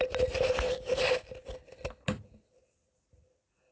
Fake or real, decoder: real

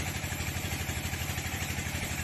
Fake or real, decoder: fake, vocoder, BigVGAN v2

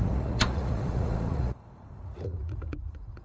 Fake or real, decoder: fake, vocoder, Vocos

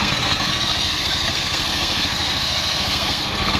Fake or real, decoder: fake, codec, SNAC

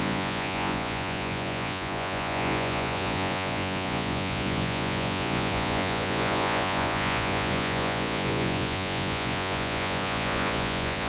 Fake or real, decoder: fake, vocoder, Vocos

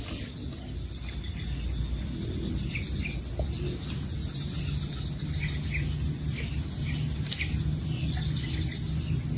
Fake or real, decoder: real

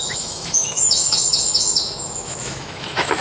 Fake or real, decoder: fake, autoencoder, DAC-VAE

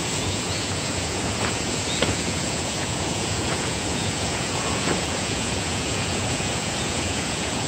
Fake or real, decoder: fake, vocoder, Vocos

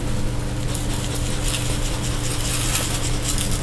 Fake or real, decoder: real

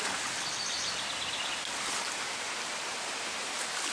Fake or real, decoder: real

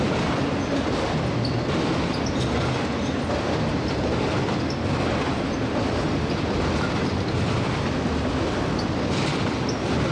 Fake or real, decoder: real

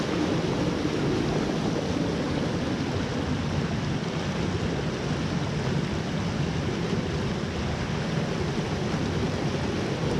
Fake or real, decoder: real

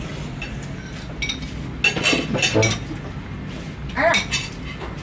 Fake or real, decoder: real